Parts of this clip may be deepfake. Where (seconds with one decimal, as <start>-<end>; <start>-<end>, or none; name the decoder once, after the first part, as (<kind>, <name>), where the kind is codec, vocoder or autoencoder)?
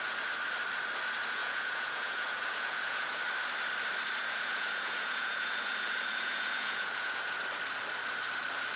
1.4-3.2 (vocoder, Vocos); 4.2-7.4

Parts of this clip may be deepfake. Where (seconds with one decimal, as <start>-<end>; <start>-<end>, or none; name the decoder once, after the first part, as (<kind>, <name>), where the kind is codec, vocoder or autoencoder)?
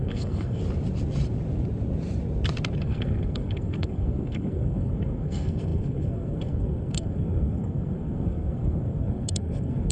0.0-0.6 (codec, SNAC); 2.8-9.9